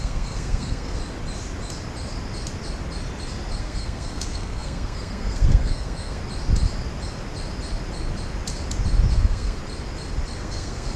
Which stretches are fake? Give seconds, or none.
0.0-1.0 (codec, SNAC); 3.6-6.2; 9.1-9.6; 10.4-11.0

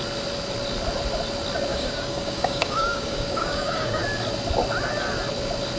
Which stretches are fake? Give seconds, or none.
1.7-4.0 (codec, DAC)